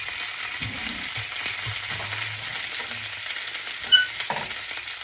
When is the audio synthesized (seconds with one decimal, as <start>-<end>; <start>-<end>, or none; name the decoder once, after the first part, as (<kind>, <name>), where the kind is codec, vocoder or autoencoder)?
none